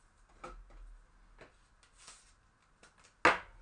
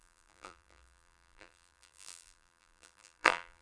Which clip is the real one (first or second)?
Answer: first